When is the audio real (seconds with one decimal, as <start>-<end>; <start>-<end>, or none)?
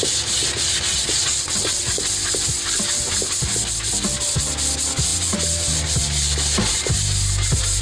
0.0-0.9; 2.0-7.8